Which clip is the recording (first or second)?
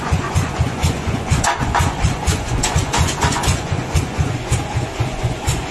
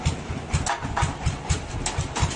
second